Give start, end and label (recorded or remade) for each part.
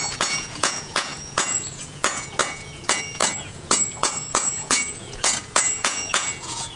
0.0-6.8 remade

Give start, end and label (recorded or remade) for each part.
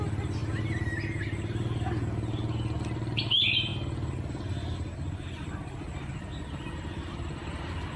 0.0-8.0 recorded